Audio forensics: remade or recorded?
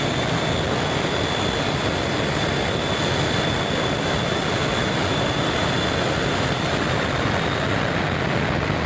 recorded